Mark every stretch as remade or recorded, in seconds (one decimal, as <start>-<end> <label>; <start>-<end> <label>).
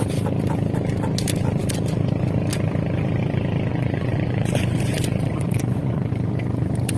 0.0-3.7 recorded; 3.7-6.1 remade; 6.1-7.0 recorded